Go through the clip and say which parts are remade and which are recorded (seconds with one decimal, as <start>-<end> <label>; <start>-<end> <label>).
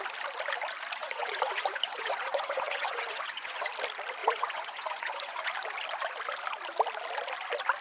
0.0-1.0 recorded; 1.0-3.7 remade; 3.7-4.2 recorded; 4.2-5.5 remade; 5.5-7.8 recorded